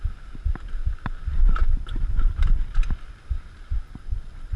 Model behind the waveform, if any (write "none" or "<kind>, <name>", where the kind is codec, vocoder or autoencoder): none